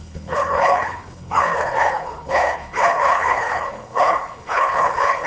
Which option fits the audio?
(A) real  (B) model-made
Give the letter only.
B